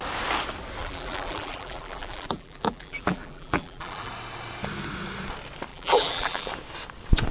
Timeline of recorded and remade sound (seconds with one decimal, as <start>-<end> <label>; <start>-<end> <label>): 0.0-0.8 recorded; 0.8-4.1 remade; 4.1-5.7 recorded; 5.7-6.5 remade; 6.5-7.3 recorded